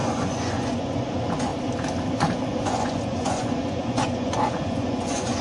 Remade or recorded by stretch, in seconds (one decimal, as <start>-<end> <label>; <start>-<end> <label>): 0.0-1.5 remade; 1.5-2.5 recorded; 2.5-5.4 remade